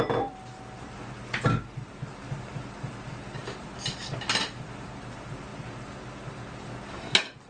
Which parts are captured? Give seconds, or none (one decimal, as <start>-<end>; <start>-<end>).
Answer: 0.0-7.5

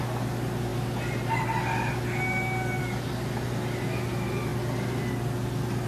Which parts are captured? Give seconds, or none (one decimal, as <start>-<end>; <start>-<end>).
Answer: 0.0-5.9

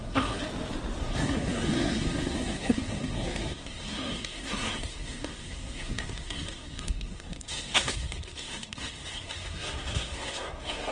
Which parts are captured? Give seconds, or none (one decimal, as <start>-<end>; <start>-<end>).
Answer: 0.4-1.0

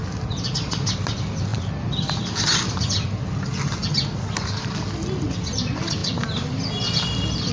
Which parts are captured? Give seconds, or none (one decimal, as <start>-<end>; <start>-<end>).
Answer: 0.0-7.5

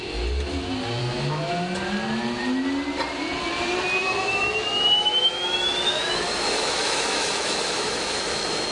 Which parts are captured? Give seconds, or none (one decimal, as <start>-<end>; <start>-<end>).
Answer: 0.0-1.0; 1.5-4.0

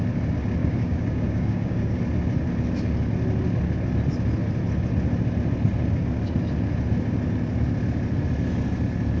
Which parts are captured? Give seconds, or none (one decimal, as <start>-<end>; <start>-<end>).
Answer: 0.0-0.6; 2.0-9.2